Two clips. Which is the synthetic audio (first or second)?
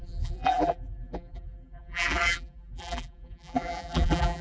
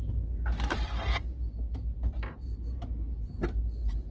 first